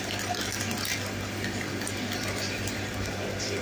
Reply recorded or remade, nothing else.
recorded